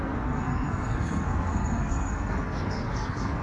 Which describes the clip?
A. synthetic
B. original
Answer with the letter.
A